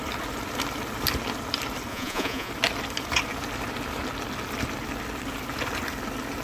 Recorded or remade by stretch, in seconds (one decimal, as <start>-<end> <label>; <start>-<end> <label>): 0.0-1.9 recorded; 1.9-2.5 remade; 2.5-6.4 recorded